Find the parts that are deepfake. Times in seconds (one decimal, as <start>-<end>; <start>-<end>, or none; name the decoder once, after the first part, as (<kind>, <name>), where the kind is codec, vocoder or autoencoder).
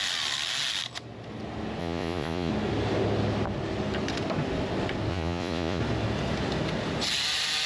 1.8-2.5 (vocoder, Vocos); 5.1-5.8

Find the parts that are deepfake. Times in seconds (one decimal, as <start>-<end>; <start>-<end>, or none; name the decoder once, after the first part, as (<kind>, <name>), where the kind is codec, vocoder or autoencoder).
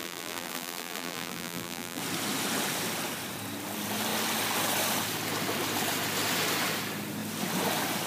0.0-2.0 (vocoder, BigVGAN v2)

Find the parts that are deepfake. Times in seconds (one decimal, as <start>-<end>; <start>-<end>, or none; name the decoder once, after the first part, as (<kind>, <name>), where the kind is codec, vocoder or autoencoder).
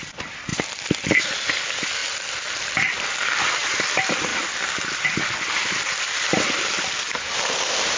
0.0-2.0 (vocoder, BigVGAN v2); 2.6-4.3; 5.9-8.0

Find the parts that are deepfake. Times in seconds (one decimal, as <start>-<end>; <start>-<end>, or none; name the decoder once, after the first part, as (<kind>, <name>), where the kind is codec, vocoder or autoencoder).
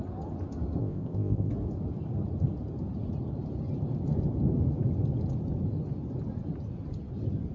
0.8-1.5 (codec, ZipCodec)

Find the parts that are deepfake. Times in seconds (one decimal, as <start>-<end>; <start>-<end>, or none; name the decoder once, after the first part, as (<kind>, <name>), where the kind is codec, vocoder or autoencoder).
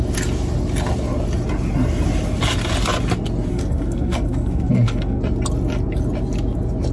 3.5-5.2 (codec, SNAC)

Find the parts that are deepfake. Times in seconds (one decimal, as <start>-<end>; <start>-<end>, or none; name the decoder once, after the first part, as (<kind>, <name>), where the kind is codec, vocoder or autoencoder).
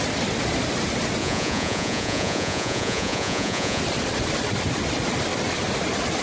1.2-3.8 (vocoder, Vocos)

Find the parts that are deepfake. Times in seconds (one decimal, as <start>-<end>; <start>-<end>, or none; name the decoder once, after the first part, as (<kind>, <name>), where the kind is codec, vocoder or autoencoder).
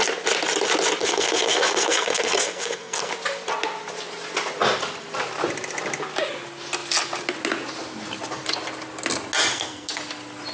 1.0-3.1 (codec, SNAC); 9.5-10.0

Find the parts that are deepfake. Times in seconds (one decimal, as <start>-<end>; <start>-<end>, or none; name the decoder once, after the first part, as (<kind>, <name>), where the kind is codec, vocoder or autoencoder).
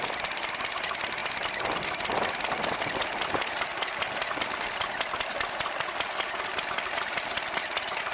none